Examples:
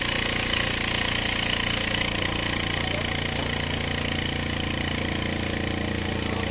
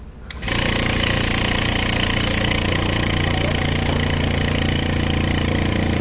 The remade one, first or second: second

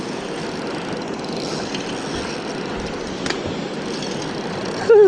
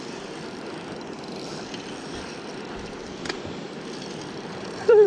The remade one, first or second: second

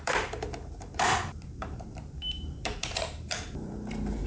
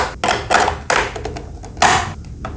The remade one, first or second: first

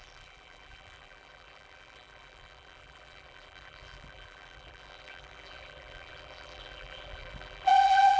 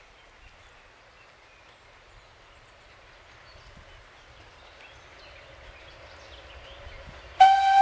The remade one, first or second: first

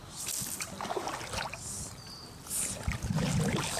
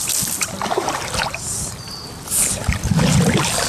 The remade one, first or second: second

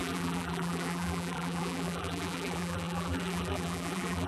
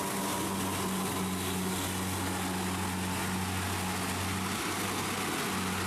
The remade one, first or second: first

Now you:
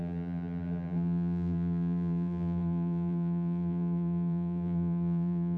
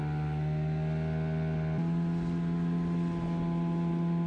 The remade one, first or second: first